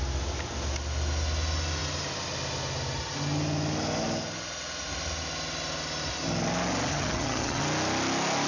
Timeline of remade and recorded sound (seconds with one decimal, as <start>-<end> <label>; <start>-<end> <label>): 0.0-6.9 recorded; 6.9-7.6 remade; 7.6-8.5 recorded